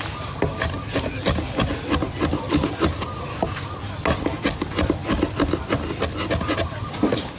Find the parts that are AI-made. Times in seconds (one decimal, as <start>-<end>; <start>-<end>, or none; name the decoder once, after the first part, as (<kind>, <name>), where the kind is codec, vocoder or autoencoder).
none